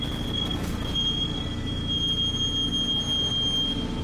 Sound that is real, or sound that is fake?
real